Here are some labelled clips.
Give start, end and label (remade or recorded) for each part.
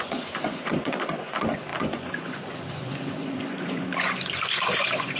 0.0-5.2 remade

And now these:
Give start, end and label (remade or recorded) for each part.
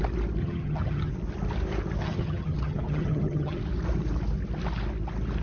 0.0-0.4 recorded; 0.4-1.1 remade; 1.1-2.0 recorded; 2.0-3.6 remade; 3.6-5.4 recorded